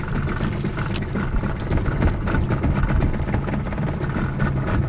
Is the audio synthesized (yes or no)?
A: no